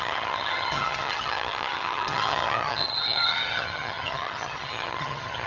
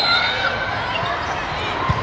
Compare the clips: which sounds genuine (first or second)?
second